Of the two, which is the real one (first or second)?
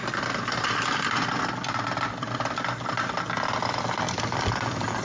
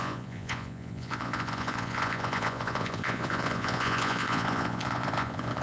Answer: first